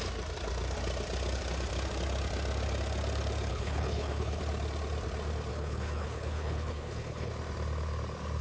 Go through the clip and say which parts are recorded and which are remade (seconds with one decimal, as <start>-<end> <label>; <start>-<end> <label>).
0.0-3.5 recorded; 3.5-4.4 remade; 4.4-5.5 recorded; 5.5-7.3 remade; 7.3-8.4 recorded